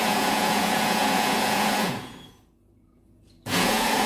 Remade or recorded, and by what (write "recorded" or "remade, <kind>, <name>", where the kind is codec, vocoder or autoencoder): remade, vocoder, Vocos